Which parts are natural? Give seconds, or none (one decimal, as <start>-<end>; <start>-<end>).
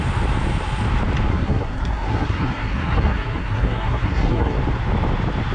0.0-1.3; 4.6-5.5